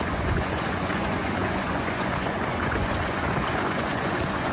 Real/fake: fake